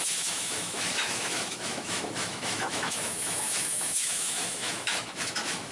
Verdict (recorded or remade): remade